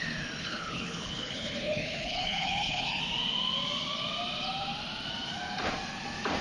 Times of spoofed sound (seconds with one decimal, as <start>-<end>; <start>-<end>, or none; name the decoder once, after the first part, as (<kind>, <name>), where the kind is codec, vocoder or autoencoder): 0.4-3.0 (codec, HILCodec)